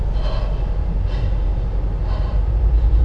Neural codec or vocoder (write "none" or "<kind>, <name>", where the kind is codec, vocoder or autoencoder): none